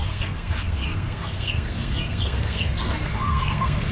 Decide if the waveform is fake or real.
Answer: fake